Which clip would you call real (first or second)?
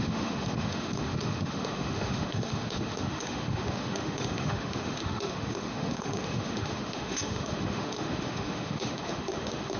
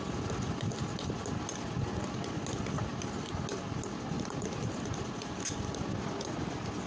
second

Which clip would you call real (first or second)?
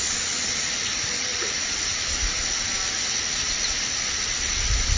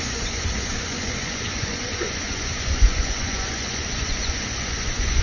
first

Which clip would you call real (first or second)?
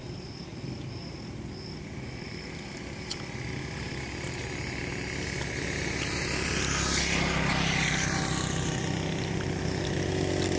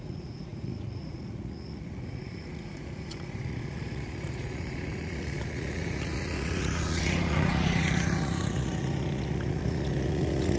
first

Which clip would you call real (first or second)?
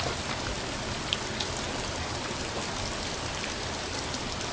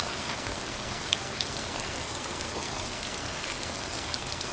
first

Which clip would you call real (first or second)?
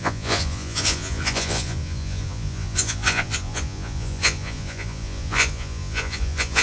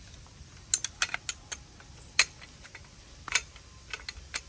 second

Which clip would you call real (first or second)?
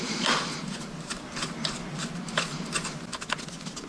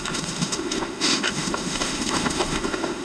first